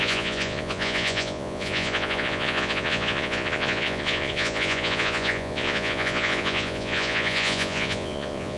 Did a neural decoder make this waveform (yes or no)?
yes